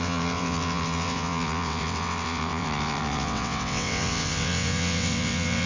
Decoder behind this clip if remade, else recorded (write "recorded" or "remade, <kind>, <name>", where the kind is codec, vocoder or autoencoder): remade, vocoder, WaveNeXt